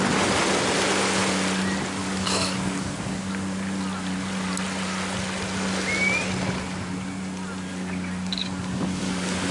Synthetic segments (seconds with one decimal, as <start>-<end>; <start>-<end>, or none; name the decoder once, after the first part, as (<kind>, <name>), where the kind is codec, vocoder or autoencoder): 2.0-3.3 (codec, DAC); 7.7-9.5